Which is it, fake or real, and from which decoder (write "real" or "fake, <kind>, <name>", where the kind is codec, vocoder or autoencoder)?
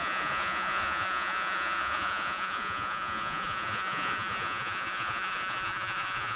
fake, vocoder, Vocos